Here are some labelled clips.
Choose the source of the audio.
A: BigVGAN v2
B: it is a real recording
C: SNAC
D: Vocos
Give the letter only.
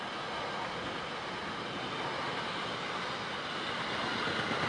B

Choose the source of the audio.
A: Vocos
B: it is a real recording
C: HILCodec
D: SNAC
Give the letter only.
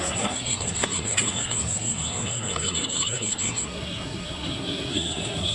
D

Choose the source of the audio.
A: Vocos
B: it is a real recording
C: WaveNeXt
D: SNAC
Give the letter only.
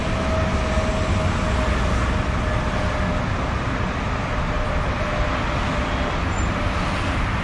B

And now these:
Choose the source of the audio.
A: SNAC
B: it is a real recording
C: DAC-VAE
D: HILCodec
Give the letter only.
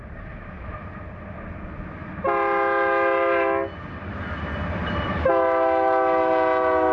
B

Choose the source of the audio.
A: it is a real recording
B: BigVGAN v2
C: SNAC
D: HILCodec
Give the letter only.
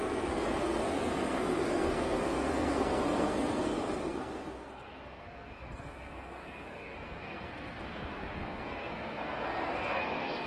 C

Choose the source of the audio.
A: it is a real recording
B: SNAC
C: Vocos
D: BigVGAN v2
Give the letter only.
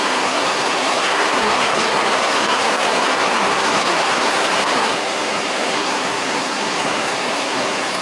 B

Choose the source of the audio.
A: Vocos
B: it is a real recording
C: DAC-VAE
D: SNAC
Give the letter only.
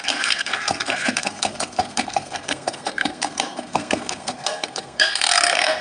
D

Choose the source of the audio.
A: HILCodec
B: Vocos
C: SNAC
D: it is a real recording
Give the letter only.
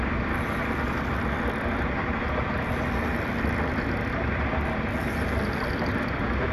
D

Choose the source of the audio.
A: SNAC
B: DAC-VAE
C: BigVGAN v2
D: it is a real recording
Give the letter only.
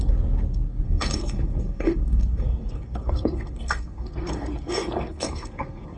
A